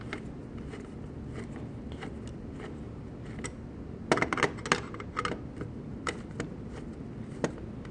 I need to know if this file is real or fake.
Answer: real